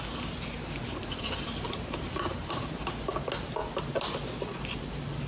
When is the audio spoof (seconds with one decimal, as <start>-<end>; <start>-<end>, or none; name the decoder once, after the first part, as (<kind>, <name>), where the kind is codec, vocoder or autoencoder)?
1.0-2.6 (vocoder, BigVGAN v2)